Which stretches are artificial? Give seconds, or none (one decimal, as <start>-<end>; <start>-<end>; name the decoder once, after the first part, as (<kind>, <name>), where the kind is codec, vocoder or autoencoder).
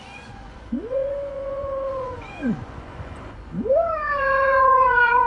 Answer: 0.0-5.3 (vocoder, Vocos)